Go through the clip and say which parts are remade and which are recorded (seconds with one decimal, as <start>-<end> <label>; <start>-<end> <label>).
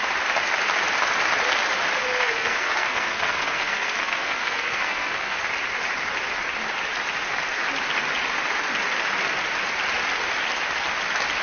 0.0-2.0 recorded; 2.0-5.4 remade; 5.4-11.4 recorded